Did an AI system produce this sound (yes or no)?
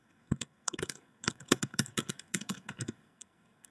yes